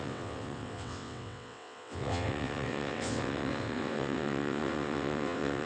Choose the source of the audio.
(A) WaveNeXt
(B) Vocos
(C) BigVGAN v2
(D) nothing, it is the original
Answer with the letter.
A